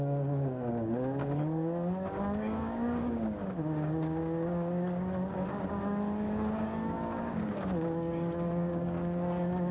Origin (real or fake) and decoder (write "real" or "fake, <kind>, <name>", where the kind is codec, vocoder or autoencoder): fake, codec, DAC